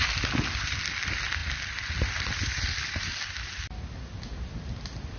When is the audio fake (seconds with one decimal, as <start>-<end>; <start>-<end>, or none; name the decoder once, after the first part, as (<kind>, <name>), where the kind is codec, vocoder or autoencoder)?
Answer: none